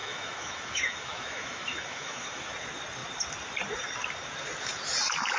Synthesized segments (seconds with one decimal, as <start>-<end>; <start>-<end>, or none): 0.0-2.5